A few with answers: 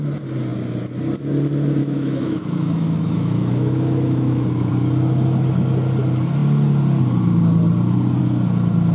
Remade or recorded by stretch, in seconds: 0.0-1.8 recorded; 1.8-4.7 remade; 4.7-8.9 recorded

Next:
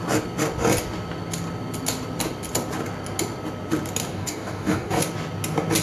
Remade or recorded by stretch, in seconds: 0.0-4.0 recorded; 4.0-5.0 remade; 5.0-5.8 recorded

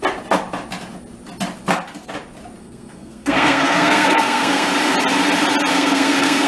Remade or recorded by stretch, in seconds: 0.0-2.6 recorded; 2.6-4.7 remade; 4.7-5.7 recorded; 5.7-6.5 remade

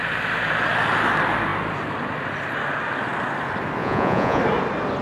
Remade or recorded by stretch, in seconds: 0.0-3.8 recorded; 3.8-4.4 remade; 4.4-5.0 recorded